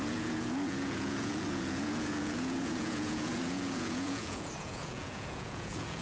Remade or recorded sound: remade